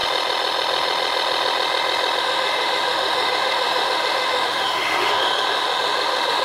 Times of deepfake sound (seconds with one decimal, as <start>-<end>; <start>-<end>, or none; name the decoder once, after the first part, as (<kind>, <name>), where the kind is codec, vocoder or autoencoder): 2.2-6.4 (autoencoder, DAC-VAE)